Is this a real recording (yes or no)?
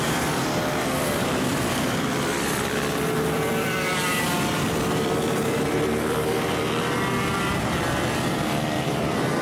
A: no